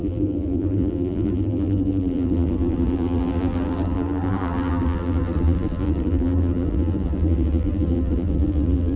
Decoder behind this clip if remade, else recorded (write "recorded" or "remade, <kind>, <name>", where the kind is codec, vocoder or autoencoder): remade, vocoder, BigVGAN v2